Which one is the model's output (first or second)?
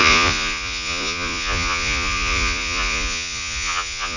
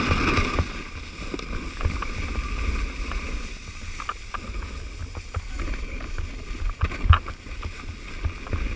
first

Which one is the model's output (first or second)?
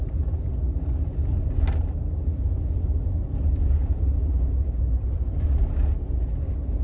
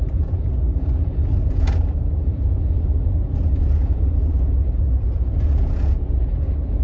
second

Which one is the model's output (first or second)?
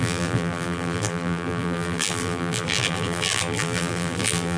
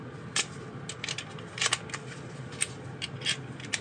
first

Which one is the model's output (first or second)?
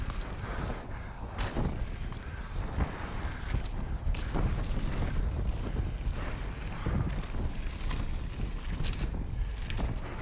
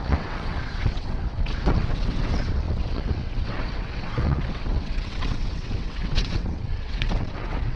second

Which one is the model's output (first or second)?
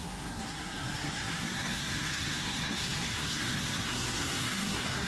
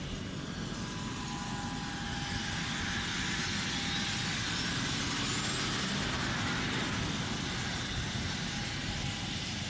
first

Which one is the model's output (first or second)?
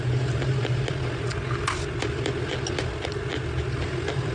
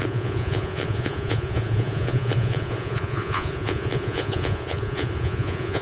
second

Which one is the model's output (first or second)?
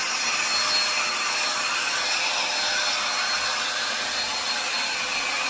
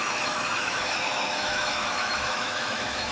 second